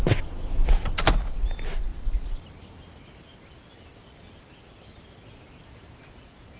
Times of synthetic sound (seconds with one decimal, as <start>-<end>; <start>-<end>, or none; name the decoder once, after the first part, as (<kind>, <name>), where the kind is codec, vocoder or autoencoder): none